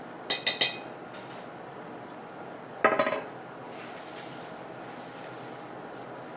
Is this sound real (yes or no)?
yes